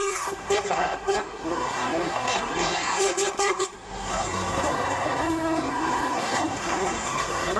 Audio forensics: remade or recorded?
remade